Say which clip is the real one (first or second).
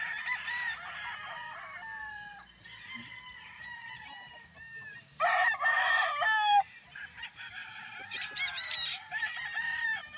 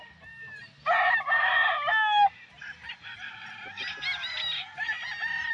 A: second